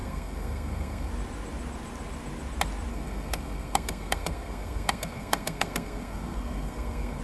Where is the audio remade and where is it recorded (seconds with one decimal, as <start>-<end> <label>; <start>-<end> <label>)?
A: 0.0-1.1 remade; 1.1-2.9 recorded; 2.9-7.2 remade